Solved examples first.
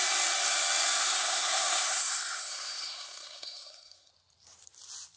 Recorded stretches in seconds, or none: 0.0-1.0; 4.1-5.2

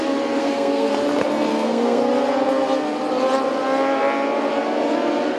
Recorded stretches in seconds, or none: 0.0-0.4; 0.9-1.5; 2.0-5.4